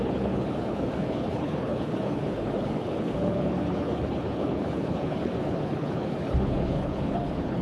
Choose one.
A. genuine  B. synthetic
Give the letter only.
B